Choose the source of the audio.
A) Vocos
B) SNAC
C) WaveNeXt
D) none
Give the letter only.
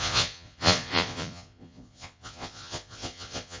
A